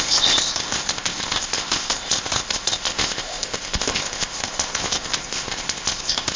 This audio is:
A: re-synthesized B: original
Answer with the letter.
A